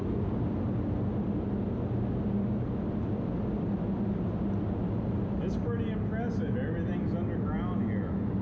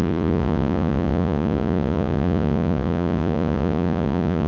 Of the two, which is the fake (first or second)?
second